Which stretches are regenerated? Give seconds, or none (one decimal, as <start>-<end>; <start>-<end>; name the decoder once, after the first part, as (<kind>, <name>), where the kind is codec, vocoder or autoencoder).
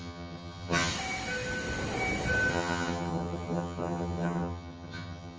0.0-0.9 (vocoder, HiFi-GAN); 2.5-5.4